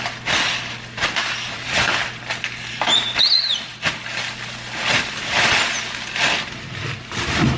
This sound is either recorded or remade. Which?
remade